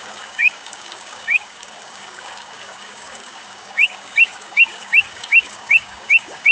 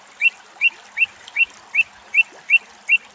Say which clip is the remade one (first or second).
first